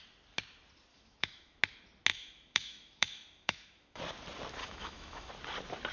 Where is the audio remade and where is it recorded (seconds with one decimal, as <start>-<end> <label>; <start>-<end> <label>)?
0.0-0.9 recorded; 0.9-1.6 remade; 1.6-2.1 recorded; 2.1-4.0 remade; 4.0-4.6 recorded; 4.6-5.3 remade; 5.3-5.9 recorded